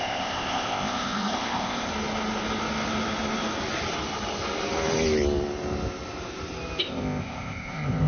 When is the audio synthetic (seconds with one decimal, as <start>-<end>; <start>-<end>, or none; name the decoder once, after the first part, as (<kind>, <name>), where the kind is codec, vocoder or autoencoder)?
0.0-1.9 (codec, ZipCodec); 6.8-8.1